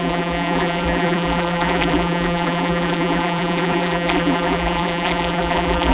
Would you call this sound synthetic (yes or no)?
yes